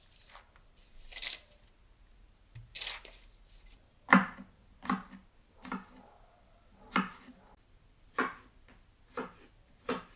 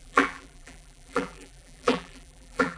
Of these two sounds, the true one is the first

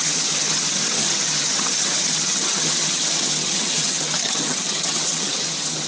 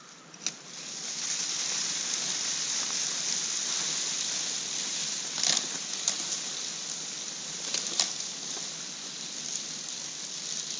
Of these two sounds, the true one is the second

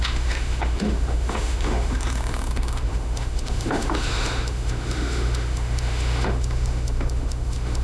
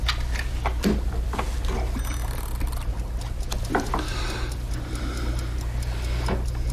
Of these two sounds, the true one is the second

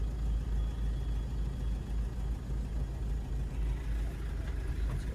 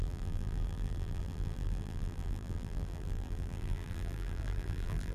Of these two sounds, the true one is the first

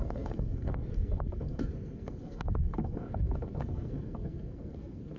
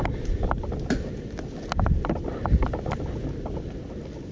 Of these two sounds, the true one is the second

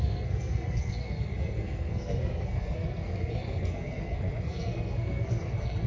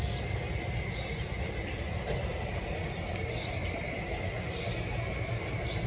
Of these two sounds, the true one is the second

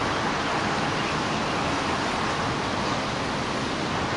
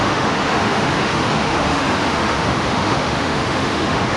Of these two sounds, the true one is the first